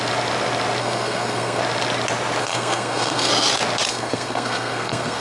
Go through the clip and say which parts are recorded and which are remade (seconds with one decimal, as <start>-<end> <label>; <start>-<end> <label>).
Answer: 0.0-0.8 recorded; 0.8-1.6 remade; 1.6-2.4 recorded; 2.4-3.3 remade; 3.3-3.9 recorded; 3.9-5.2 remade